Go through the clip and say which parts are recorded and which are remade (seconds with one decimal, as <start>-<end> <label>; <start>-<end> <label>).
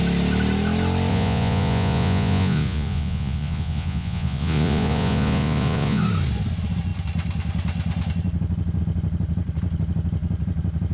0.0-1.1 recorded; 1.1-6.0 remade; 6.0-10.9 recorded